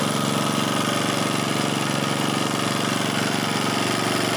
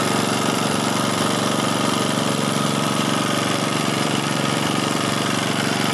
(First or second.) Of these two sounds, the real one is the first